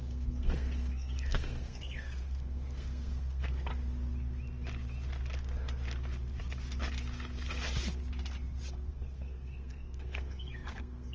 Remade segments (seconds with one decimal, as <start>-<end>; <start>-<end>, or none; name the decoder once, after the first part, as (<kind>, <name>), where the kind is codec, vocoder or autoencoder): 0.0-3.7 (codec, SNAC); 8.9-11.1